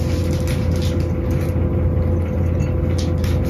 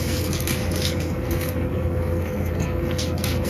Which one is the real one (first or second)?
first